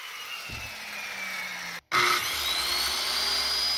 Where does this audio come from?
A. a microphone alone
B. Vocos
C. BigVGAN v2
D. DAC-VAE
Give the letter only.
A